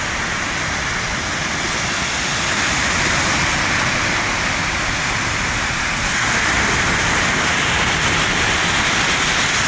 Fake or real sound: real